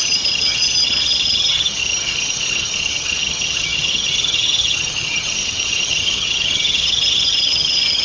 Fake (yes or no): yes